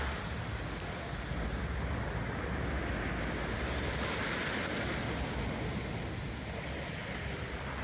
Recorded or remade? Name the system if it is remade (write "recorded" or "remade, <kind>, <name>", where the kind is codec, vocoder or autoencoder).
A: recorded